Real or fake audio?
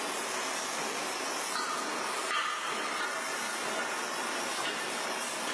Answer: real